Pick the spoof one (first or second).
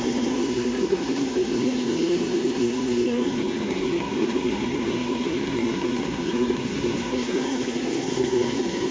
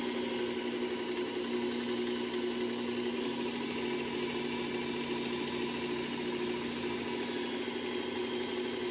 first